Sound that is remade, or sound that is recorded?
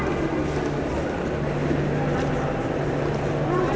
recorded